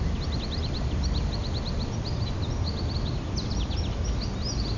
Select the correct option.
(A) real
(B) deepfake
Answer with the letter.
A